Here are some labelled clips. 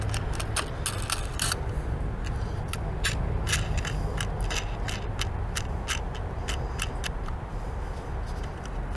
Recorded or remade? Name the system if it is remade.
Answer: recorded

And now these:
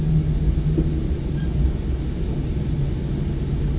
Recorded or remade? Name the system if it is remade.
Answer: recorded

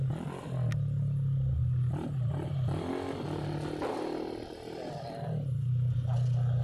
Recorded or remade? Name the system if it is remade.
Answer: recorded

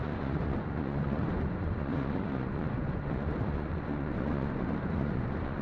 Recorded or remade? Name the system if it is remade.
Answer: remade, vocoder, Vocos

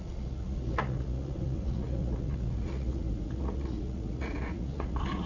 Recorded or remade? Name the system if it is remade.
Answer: remade, vocoder, Vocos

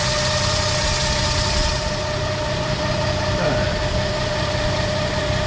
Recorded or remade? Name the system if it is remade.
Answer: recorded